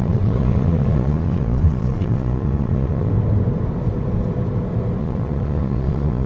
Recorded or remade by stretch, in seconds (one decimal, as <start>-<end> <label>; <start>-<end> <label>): 0.0-3.1 remade; 3.1-5.0 recorded; 5.0-6.3 remade